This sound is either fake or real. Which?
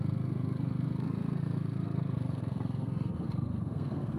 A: fake